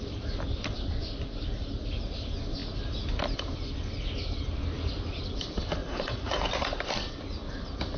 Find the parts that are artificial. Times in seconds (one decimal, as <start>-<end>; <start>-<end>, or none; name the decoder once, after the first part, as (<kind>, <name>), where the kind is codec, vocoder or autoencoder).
5.8-6.5 (vocoder, Vocos)